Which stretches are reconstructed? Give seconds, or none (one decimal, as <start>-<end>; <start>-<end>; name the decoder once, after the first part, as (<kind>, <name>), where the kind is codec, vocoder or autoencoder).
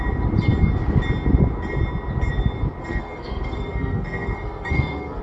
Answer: 2.8-5.2 (codec, SNAC)